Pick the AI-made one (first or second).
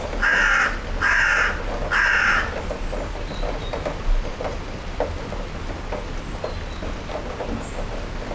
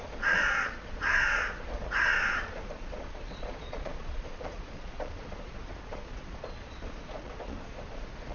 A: second